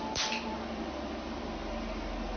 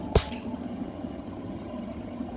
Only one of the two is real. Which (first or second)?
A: first